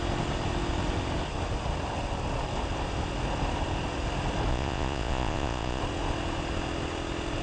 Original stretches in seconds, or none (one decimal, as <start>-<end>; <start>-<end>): 0.0-4.5; 5.8-7.4